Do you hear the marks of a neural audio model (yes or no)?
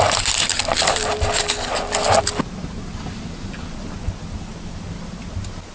no